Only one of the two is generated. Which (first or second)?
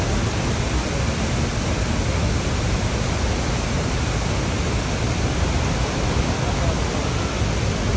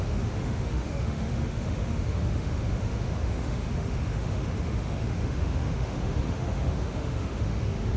second